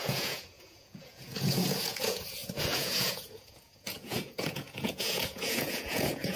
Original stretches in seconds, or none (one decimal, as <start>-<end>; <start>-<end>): none